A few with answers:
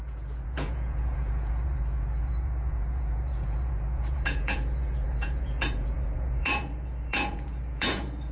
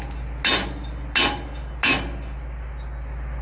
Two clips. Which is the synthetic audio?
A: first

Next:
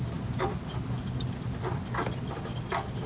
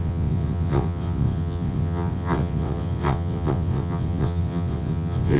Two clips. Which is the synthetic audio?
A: second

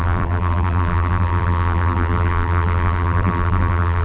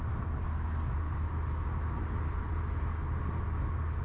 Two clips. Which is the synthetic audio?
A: first